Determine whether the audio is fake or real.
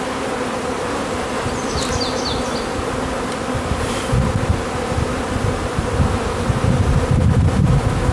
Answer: real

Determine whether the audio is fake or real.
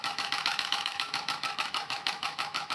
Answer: fake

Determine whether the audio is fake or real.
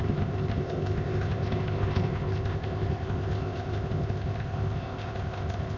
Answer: fake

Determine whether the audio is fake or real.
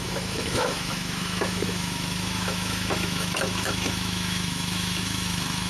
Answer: fake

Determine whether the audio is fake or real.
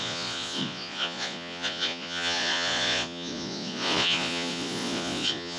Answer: fake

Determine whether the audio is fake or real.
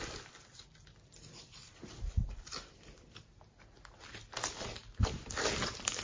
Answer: real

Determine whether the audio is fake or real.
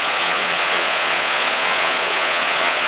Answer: fake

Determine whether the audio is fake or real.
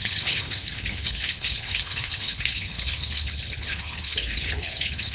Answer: fake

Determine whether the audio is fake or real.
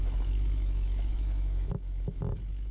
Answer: fake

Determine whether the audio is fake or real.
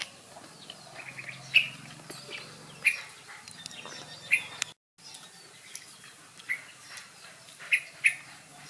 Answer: real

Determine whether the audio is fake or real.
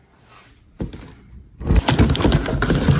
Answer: real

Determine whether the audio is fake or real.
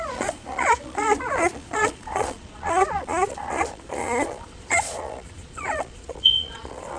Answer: fake